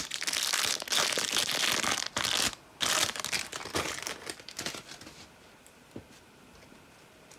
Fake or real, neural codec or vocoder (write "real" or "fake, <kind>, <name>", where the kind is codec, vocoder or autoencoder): real